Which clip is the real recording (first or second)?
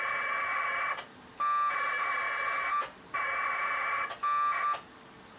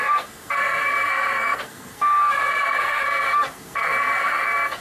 first